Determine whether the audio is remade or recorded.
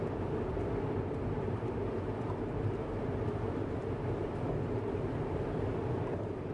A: remade